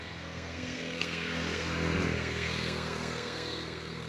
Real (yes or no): no